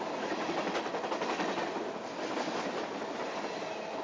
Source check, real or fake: real